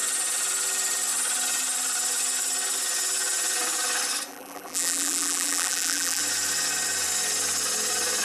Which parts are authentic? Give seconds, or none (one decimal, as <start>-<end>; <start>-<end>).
0.0-4.3; 6.2-8.2